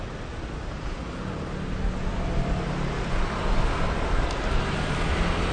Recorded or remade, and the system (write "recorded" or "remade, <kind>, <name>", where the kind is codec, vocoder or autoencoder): recorded